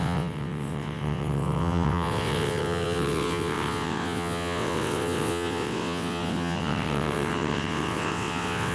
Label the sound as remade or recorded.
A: remade